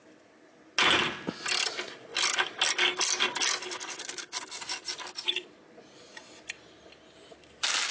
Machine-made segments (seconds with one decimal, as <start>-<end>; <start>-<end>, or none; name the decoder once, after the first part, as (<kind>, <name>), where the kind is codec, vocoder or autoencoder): 4.0-4.6 (codec, SNAC)